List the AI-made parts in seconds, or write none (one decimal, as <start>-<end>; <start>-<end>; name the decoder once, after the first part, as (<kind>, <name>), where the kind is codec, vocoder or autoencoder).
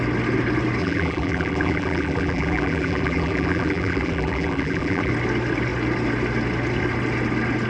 0.8-5.1 (vocoder, BigVGAN v2)